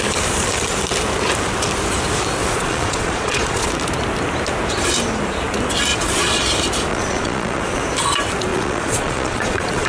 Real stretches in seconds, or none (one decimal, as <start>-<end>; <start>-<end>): 0.0-2.4; 3.7-5.9; 6.5-6.9; 7.8-8.5